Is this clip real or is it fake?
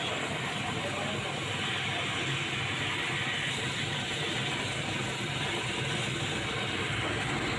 real